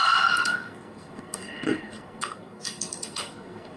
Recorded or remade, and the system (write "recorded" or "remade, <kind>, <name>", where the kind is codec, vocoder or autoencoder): remade, codec, SNAC